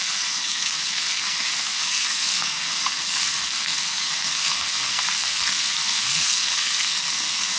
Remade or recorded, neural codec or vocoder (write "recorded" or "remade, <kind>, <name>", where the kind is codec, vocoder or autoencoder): remade, codec, SNAC